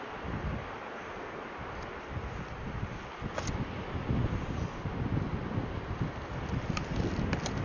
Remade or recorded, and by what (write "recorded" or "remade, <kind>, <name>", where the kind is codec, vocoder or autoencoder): recorded